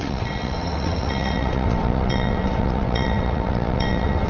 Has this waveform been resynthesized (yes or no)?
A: yes